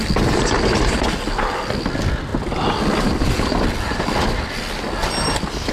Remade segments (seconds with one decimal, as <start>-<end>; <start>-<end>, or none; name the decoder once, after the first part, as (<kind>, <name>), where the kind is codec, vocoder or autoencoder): 2.3-4.5 (vocoder, BigVGAN v2)